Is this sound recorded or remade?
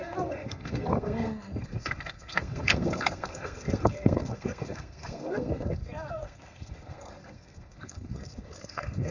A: remade